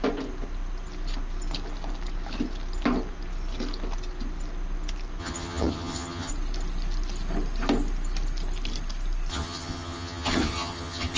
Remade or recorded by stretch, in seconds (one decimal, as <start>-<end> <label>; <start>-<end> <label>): 0.0-5.2 recorded; 5.2-6.3 remade; 6.3-9.3 recorded; 9.3-11.2 remade